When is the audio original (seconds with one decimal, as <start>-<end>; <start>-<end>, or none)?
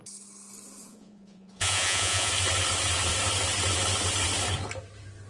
0.0-0.8; 2.3-5.3